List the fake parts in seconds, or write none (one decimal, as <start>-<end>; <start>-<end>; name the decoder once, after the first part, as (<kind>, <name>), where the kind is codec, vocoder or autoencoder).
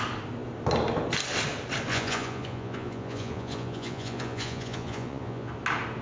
1.9-5.5 (vocoder, Vocos)